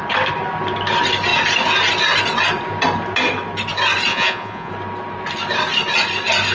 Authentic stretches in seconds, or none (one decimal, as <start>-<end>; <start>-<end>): 0.0-4.1; 4.7-6.5